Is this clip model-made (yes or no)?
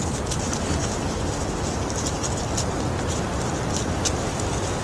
no